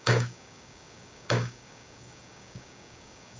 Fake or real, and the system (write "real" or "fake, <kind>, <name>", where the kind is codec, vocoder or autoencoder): fake, codec, DAC